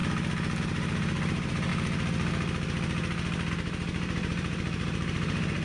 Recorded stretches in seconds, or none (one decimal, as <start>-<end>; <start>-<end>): 0.0-0.6; 1.7-3.5